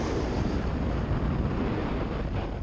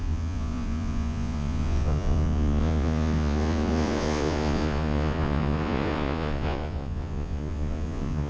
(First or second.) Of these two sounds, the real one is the first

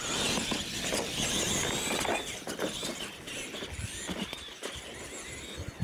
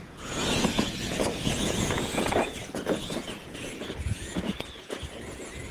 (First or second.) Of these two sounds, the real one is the first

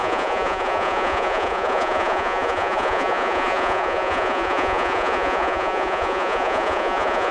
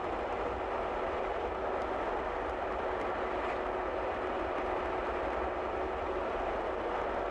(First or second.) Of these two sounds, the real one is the second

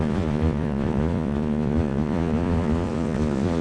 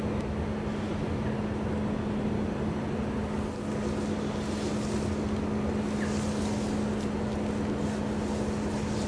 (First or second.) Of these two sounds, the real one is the second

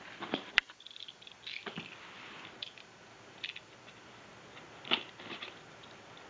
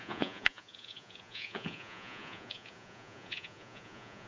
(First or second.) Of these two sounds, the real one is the first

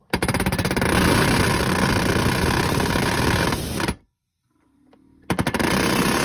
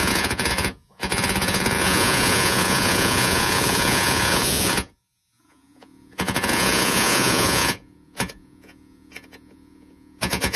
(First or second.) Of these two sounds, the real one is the first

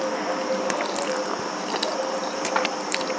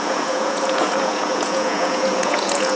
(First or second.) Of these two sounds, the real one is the first